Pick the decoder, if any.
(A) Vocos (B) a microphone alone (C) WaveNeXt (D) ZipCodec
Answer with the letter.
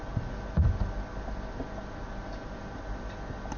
B